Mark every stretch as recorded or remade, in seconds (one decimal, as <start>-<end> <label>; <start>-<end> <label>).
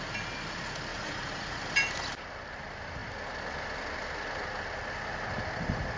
0.0-0.9 recorded; 0.9-1.6 remade; 1.6-6.0 recorded